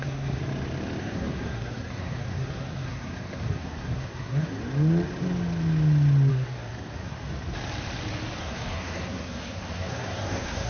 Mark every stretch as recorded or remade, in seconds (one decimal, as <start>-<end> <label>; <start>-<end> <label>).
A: 0.0-0.4 remade; 0.4-1.0 recorded; 1.0-4.6 remade; 4.6-6.3 recorded; 6.3-7.3 remade; 7.3-8.4 recorded; 8.4-10.7 remade